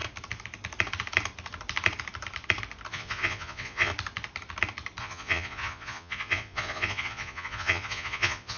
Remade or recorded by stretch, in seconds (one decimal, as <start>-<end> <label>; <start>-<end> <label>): 0.0-2.9 recorded; 2.9-3.9 remade; 3.9-5.0 recorded; 5.0-8.6 remade